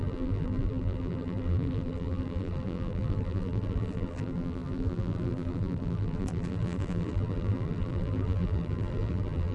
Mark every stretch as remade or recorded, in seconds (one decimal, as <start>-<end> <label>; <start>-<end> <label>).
0.0-9.5 remade